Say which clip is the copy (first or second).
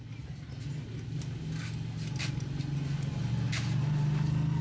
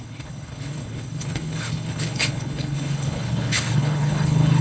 second